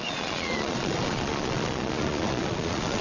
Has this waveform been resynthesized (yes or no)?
yes